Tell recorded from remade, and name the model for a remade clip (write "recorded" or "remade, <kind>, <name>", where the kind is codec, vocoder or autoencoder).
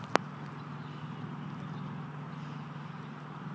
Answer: recorded